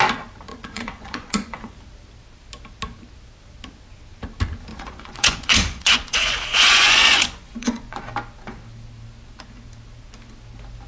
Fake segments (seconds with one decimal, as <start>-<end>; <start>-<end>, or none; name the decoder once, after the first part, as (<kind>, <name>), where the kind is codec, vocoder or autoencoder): 0.5-1.8 (vocoder, Vocos); 4.7-8.0